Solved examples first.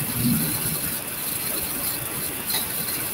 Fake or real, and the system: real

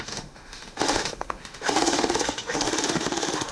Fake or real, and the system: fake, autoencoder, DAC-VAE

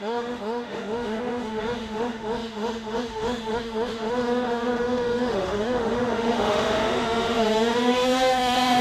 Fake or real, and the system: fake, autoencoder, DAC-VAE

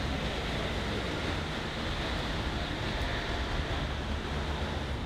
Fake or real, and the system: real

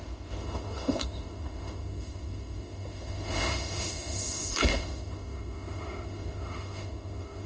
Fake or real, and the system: fake, autoencoder, DAC-VAE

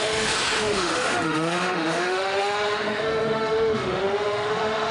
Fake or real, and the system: fake, autoencoder, DAC-VAE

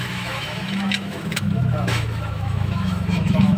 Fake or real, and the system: fake, autoencoder, DAC-VAE